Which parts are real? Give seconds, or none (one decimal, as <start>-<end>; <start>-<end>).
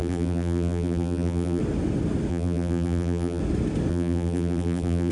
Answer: 1.6-2.3; 3.4-3.9